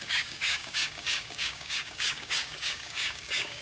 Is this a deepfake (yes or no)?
yes